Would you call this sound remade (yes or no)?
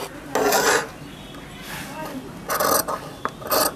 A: no